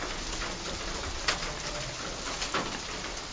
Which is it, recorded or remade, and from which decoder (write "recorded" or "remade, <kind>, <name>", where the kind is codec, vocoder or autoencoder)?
recorded